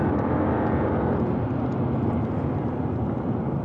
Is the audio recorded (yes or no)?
yes